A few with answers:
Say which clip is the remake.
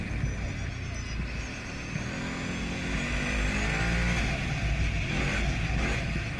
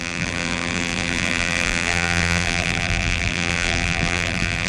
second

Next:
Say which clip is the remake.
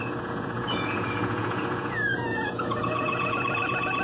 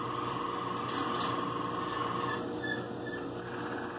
first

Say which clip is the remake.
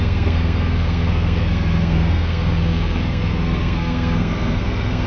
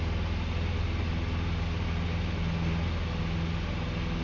first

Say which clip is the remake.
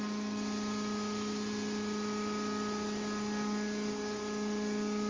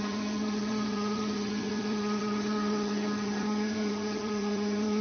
second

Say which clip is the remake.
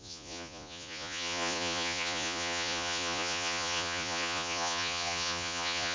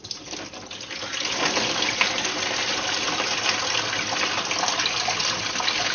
first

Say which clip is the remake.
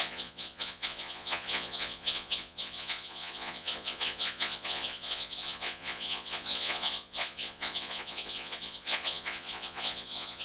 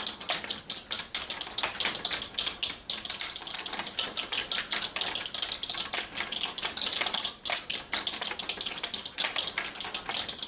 first